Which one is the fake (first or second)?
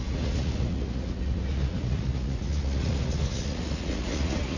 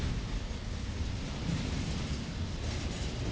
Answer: first